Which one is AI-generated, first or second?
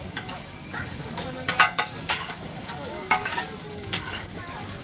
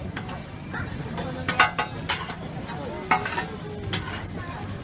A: first